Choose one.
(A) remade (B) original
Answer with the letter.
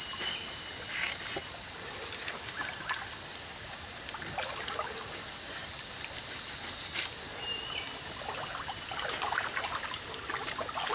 B